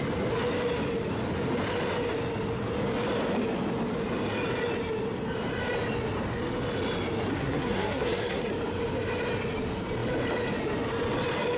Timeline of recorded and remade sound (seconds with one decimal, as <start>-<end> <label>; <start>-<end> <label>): 0.0-7.3 recorded; 7.3-8.5 remade; 8.5-11.6 recorded